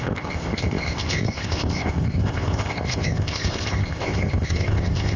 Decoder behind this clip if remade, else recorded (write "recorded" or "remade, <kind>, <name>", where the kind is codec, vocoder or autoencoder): remade, codec, ZipCodec